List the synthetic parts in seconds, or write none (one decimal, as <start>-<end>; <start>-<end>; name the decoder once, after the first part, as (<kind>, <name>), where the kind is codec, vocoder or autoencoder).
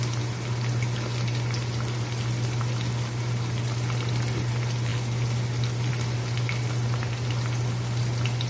none